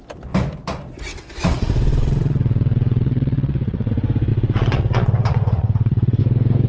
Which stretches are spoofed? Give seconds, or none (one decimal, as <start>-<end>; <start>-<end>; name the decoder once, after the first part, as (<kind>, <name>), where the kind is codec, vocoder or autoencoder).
1.1-3.9 (vocoder, WaveNeXt); 4.3-6.2